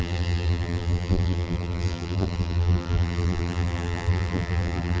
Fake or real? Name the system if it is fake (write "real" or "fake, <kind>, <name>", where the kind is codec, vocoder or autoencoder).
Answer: fake, vocoder, BigVGAN v2